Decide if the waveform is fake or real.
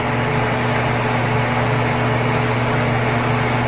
real